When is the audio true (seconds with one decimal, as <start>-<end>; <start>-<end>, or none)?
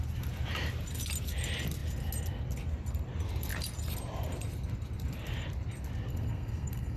0.0-6.1